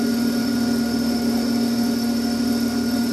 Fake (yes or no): no